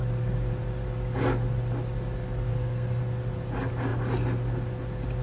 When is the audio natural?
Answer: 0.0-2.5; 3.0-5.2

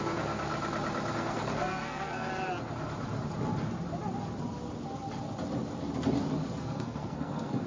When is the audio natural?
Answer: 0.5-1.1; 2.3-6.6

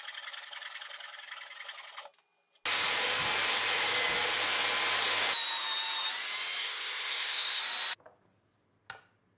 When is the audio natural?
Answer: 0.0-6.6; 7.6-9.4

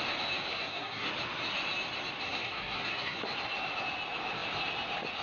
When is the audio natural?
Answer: 0.0-0.5; 1.1-2.2; 3.2-5.2

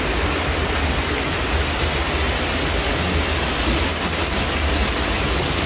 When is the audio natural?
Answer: 0.0-5.7

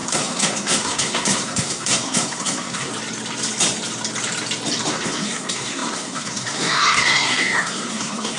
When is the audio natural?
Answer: 2.9-4.9

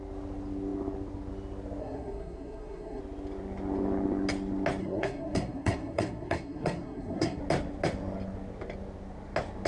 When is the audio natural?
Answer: 0.0-1.8; 3.0-4.8; 7.4-9.7

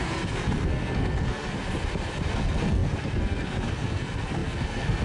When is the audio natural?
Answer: 1.6-2.3